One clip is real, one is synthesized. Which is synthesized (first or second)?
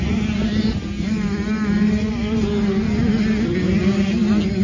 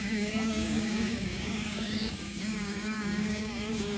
second